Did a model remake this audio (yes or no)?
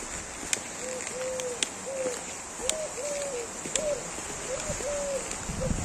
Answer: no